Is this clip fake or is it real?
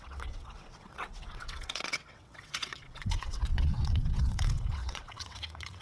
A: fake